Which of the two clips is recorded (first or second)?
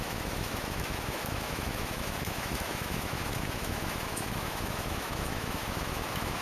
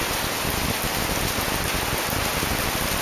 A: second